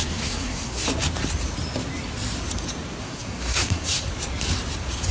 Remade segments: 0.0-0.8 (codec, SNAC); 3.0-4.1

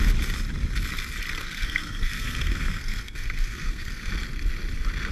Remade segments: 1.4-4.1 (codec, SNAC)

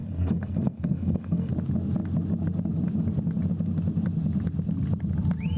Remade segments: 0.0-1.5 (codec, SNAC)

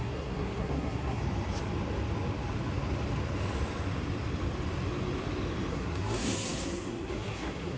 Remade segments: 0.0-1.2 (codec, SNAC); 5.7-7.8

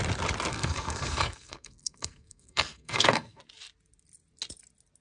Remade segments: 0.5-3.4 (codec, SNAC)